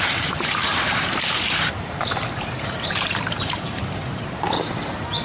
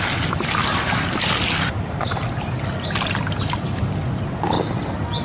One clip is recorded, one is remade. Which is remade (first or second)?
first